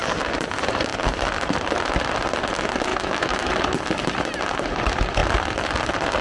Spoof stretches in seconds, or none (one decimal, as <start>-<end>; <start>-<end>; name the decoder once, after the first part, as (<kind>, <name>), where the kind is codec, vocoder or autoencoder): 2.9-3.5 (autoencoder, DAC-VAE)